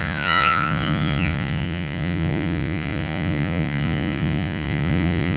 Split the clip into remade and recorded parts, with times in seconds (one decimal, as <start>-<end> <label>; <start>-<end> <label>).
0.0-5.4 remade